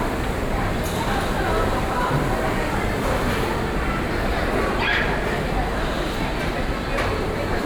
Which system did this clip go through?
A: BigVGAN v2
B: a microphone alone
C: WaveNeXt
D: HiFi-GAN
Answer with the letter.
A